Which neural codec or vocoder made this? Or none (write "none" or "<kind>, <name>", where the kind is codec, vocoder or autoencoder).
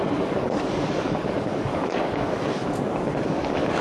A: codec, DAC